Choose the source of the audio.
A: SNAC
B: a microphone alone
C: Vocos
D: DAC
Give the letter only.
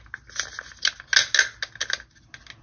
B